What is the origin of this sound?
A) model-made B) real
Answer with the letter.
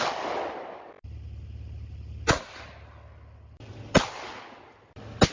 B